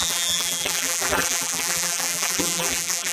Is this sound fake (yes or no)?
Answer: yes